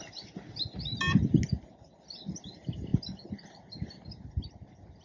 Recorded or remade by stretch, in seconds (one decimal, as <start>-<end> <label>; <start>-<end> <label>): 0.0-5.0 recorded